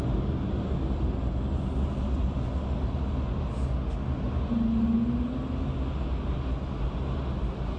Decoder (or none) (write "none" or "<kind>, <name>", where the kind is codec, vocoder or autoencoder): none